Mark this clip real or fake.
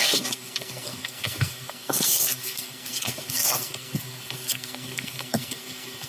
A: fake